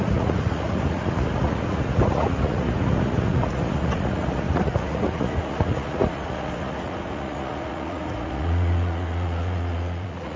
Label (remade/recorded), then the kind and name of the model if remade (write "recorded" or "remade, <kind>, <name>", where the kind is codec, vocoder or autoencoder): remade, vocoder, Vocos